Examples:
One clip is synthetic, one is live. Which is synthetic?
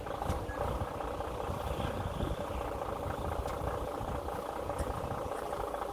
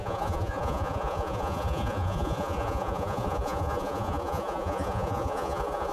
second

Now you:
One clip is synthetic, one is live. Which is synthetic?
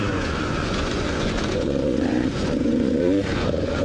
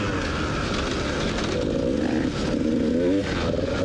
first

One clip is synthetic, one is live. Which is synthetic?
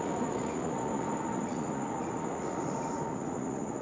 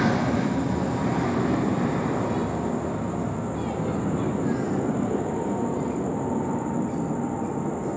first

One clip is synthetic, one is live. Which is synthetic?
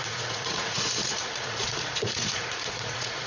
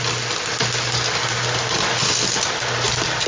first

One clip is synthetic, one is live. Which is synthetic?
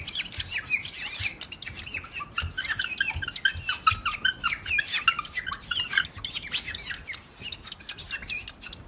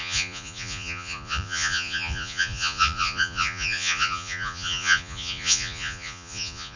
second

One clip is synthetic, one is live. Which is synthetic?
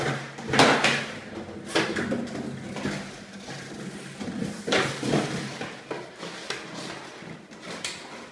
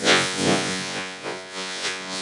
second